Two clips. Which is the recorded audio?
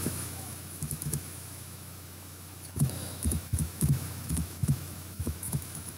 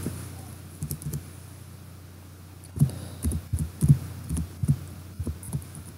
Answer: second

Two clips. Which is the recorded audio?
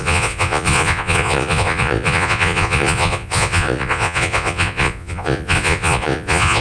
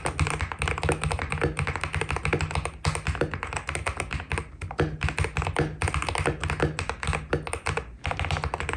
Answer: second